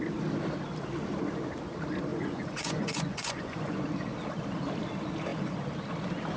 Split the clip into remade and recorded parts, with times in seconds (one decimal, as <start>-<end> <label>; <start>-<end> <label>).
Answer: 0.0-2.1 recorded; 2.1-3.8 remade; 3.8-6.4 recorded